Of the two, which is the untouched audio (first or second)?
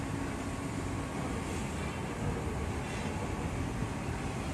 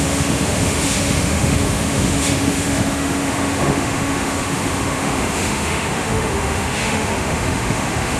first